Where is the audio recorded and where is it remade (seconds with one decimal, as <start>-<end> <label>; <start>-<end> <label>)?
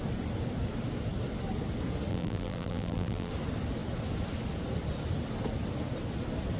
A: 0.0-2.1 recorded; 2.1-3.3 remade; 3.3-6.6 recorded